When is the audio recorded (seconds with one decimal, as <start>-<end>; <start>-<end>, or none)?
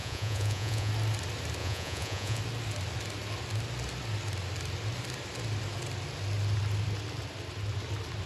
0.9-1.6; 2.4-8.3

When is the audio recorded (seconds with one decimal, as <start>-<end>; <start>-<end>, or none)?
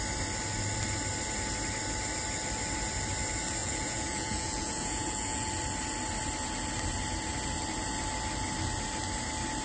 0.0-3.6; 5.5-9.6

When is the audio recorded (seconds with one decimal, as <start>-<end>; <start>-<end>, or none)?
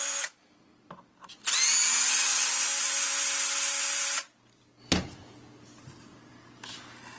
0.0-7.2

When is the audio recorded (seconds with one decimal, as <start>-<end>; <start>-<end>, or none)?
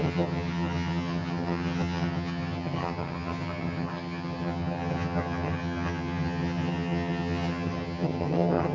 none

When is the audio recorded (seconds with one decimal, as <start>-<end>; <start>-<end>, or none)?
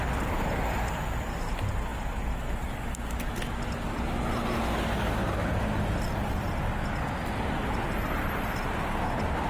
0.0-9.5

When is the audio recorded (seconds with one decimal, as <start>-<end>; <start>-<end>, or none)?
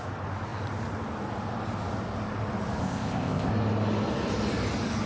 0.0-2.8; 3.5-5.1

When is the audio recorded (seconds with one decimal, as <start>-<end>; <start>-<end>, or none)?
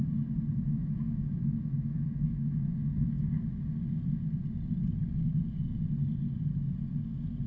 0.0-0.7; 3.4-7.5